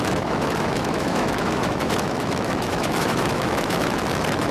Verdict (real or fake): fake